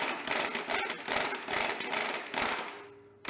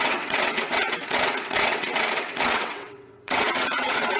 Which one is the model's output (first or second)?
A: second